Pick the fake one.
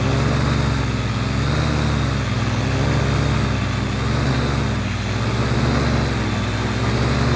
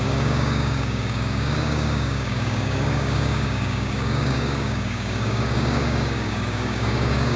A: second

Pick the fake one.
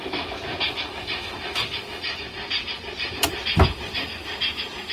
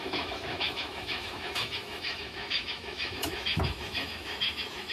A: second